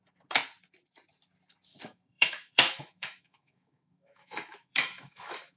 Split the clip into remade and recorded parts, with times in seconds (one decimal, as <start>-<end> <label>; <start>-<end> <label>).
0.0-1.9 recorded; 1.9-5.6 remade